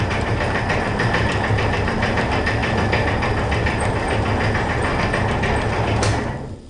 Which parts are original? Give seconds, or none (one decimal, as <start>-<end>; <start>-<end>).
2.6-6.7